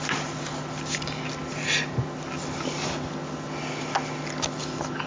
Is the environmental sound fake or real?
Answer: real